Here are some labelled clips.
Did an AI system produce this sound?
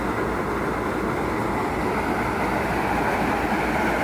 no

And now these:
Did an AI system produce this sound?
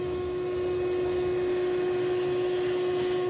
no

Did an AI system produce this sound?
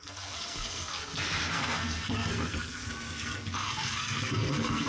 yes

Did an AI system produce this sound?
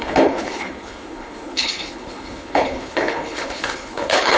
yes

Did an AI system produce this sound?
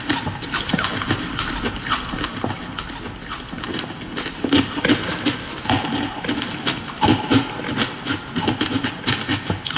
no